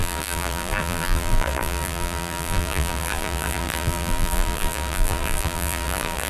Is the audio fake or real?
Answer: fake